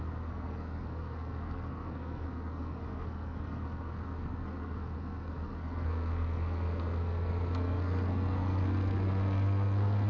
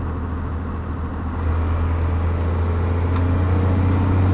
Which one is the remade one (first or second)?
first